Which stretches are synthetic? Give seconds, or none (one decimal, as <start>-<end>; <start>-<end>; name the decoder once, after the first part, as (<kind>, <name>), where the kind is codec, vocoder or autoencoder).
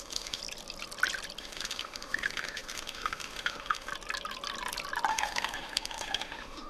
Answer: 0.0-0.4 (autoencoder, DAC-VAE); 1.4-3.9; 5.1-6.7